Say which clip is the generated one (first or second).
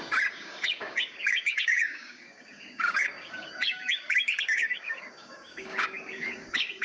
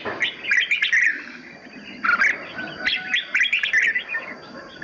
first